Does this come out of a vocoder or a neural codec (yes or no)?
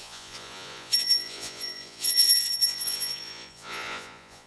yes